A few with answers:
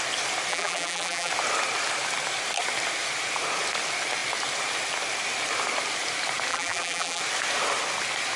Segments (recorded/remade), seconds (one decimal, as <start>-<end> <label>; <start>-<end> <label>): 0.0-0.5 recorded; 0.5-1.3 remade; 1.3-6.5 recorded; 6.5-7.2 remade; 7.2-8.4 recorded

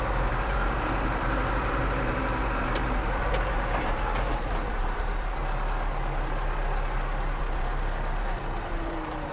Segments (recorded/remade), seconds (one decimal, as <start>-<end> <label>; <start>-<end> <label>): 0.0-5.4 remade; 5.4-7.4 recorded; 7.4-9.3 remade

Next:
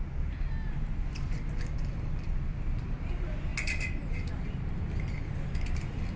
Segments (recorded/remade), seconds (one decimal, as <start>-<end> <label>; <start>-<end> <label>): 0.0-6.2 recorded

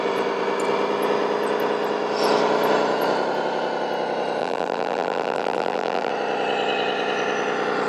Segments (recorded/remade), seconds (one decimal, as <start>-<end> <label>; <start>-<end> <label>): 0.0-4.4 recorded; 4.4-6.1 remade; 6.1-7.9 recorded

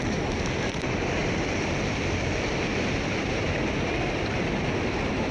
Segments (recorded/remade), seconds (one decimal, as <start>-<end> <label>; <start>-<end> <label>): 0.0-2.7 recorded; 2.7-5.3 remade